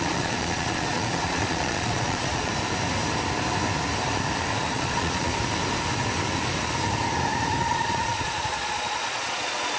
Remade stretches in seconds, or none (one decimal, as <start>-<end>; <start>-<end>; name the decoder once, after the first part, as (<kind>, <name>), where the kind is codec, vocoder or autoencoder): 0.0-2.5 (vocoder, Vocos); 4.7-5.3; 7.6-9.8